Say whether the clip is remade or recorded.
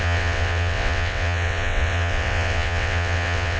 remade